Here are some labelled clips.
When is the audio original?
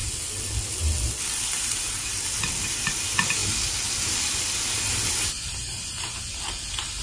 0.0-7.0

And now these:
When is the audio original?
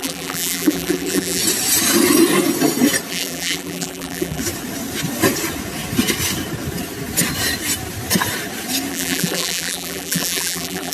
1.4-3.1; 4.4-8.9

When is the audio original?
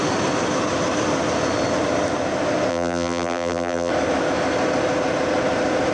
0.0-2.7; 3.9-5.9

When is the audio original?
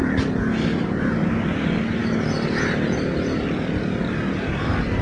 1.3-5.0